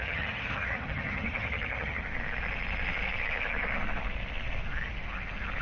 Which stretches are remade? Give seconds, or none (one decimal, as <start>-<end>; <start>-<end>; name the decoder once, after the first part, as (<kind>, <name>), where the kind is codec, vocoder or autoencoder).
0.0-2.0 (vocoder, HiFi-GAN)

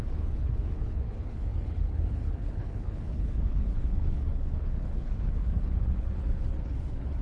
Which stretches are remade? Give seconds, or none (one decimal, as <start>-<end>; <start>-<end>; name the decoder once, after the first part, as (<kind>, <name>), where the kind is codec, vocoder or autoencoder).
0.0-7.2 (codec, HILCodec)

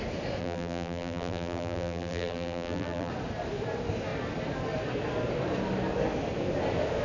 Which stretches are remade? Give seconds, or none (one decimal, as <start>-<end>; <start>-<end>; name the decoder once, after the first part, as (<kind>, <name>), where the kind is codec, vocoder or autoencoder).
0.4-3.1 (vocoder, BigVGAN v2)

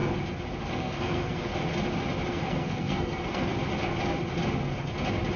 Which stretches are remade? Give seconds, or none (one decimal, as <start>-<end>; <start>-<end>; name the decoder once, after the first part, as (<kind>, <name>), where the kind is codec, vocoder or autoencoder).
0.7-1.5 (codec, SNAC); 2.3-3.5

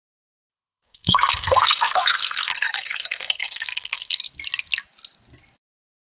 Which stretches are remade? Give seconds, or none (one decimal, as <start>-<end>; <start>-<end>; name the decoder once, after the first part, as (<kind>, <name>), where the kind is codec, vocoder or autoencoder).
0.5-4.2 (codec, SNAC)